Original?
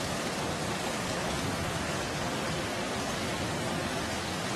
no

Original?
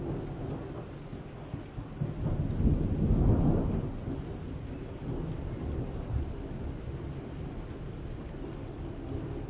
yes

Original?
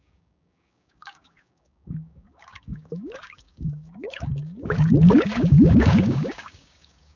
no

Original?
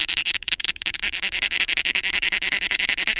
no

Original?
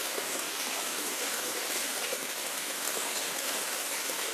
no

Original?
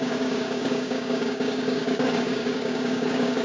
no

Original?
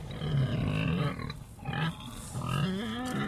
yes